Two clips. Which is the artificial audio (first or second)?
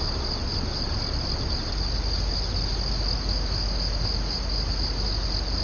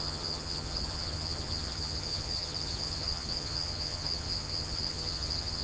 second